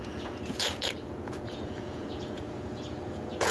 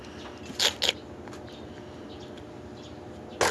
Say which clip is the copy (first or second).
first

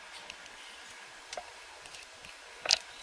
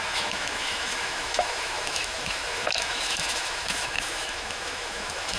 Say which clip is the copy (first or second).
second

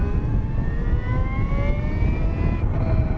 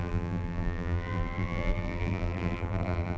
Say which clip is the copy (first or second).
second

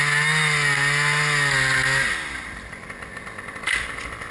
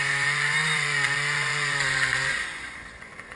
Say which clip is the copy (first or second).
second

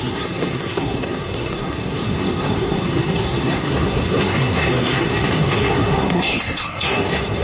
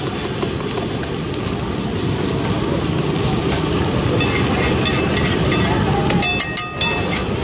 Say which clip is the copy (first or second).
first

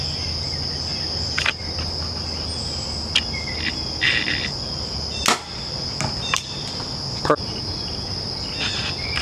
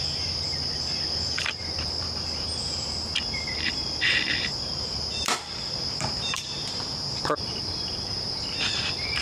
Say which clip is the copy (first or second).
second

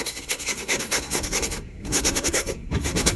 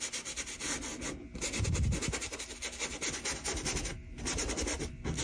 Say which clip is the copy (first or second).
first